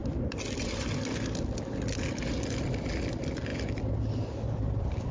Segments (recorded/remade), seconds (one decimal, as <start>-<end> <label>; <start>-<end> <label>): 0.0-5.1 recorded